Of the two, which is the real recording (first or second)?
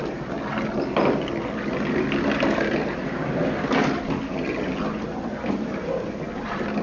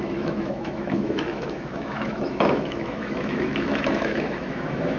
first